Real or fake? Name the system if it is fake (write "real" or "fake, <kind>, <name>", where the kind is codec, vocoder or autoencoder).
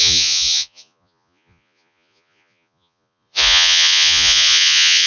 fake, vocoder, Vocos